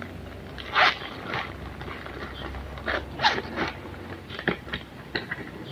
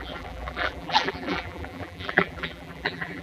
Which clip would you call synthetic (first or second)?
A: second